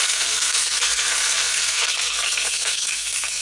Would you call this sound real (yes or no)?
no